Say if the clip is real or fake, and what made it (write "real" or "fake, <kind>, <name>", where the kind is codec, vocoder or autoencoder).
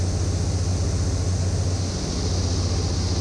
real